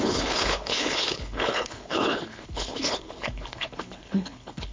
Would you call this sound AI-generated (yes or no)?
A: yes